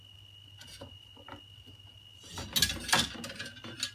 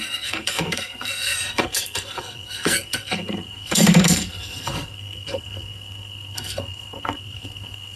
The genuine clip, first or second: first